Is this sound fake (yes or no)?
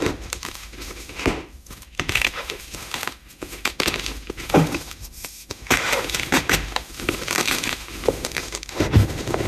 yes